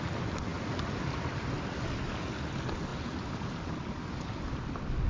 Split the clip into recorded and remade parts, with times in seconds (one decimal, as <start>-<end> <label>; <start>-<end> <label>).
0.0-5.1 recorded